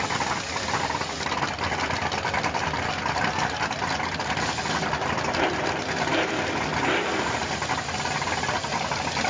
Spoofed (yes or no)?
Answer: no